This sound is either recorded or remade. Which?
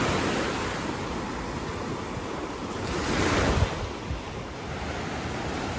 recorded